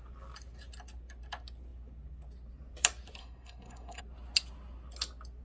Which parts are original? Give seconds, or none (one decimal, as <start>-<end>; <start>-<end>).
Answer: 0.0-3.2; 4.0-5.4